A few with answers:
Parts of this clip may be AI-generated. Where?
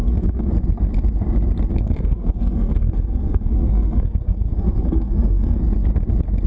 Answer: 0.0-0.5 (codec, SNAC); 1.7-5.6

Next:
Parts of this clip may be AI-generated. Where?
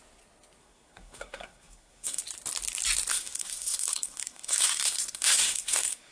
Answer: 0.6-2.2 (codec, SNAC); 3.1-6.1